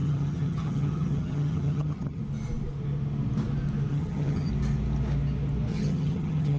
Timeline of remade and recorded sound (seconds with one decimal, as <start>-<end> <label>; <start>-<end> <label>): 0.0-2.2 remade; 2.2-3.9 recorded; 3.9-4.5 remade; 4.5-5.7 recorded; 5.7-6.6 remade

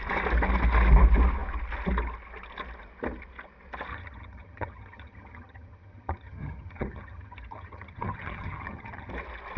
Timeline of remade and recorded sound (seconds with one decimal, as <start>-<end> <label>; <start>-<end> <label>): 0.0-3.9 recorded; 3.9-9.1 remade; 9.1-9.6 recorded

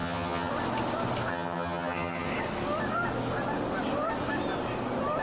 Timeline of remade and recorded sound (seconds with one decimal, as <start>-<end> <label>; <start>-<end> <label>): 0.0-0.5 remade; 0.5-1.3 recorded; 1.3-2.3 remade; 2.3-5.2 recorded

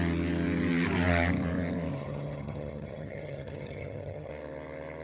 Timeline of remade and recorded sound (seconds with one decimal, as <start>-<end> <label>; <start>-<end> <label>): 0.0-1.9 recorded; 1.9-4.3 remade; 4.3-5.0 recorded

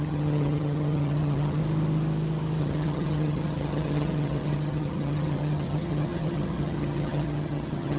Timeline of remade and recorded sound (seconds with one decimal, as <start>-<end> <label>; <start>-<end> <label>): 0.0-1.6 remade; 1.6-2.6 recorded; 2.6-8.0 remade

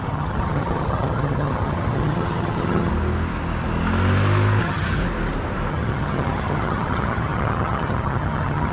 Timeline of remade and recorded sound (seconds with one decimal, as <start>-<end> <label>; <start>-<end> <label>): 0.0-2.9 remade; 2.9-4.6 recorded; 4.6-5.0 remade; 5.0-5.7 recorded; 5.7-8.7 remade

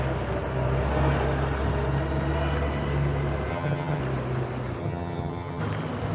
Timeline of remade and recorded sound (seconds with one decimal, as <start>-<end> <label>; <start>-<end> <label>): 0.0-3.5 recorded; 3.5-4.0 remade; 4.0-4.8 recorded; 4.8-5.6 remade; 5.6-6.1 recorded